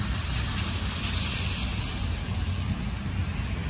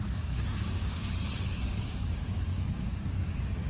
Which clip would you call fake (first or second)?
second